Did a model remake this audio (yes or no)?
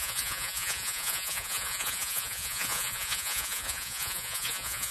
yes